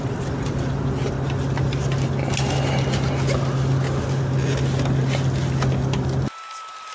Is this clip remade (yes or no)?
no